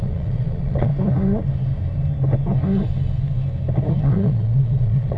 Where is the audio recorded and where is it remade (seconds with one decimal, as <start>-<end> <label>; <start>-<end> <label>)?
0.0-0.9 remade; 0.9-4.0 recorded; 4.0-5.2 remade